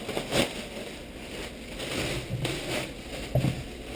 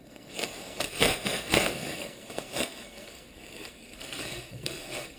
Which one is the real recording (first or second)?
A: first